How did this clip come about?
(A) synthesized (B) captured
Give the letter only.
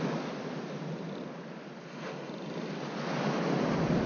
B